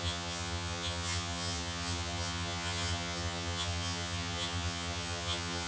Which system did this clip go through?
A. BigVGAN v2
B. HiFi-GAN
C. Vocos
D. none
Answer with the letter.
B